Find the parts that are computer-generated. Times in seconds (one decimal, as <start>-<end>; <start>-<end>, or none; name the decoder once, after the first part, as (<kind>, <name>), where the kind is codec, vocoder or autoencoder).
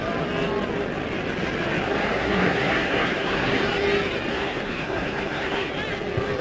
2.0-3.6 (codec, SNAC); 4.3-5.7